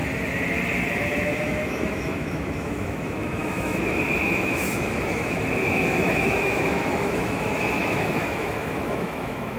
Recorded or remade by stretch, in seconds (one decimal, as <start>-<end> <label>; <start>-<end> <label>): 0.0-0.9 recorded; 0.9-9.6 remade

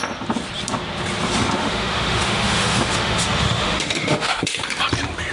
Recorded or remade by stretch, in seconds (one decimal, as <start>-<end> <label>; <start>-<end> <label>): 0.0-1.6 recorded; 1.6-4.8 remade; 4.8-5.3 recorded

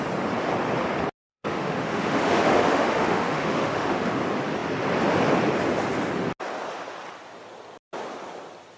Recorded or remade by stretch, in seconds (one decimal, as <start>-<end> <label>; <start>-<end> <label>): 0.0-1.3 recorded; 1.3-4.1 remade; 4.1-8.8 recorded

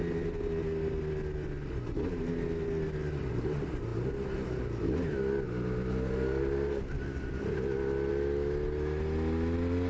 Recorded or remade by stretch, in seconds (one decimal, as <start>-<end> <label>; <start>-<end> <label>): 0.0-9.9 recorded

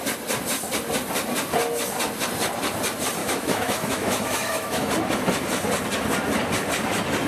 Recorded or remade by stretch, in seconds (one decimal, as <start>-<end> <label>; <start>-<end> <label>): 0.0-3.2 recorded; 3.2-4.9 remade; 4.9-7.3 recorded

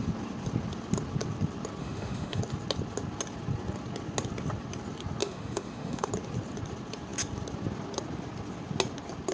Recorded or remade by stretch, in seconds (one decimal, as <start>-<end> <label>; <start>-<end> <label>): 0.0-1.8 recorded; 1.8-2.4 remade; 2.4-5.2 recorded; 5.2-6.1 remade; 6.1-9.3 recorded